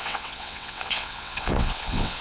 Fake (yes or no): yes